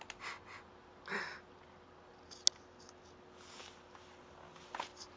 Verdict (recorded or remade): recorded